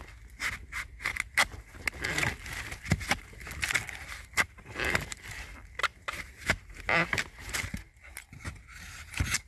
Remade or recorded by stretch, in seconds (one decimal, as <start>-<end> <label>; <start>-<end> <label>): 0.0-9.5 recorded